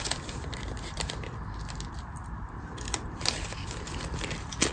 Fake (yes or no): no